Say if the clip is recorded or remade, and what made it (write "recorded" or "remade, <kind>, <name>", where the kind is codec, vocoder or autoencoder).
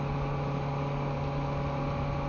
recorded